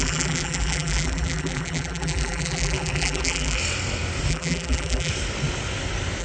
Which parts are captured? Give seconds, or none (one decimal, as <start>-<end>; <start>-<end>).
3.6-4.3; 5.1-6.2

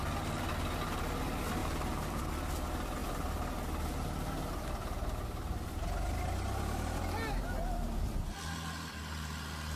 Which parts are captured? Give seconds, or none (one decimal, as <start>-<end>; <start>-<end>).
0.0-1.6; 2.2-9.8

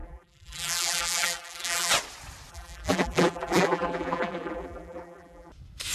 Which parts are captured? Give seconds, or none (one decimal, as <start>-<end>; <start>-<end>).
1.9-2.5; 5.5-5.9

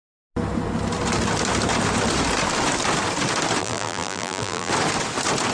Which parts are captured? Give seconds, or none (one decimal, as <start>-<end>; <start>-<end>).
0.0-3.6; 4.7-5.5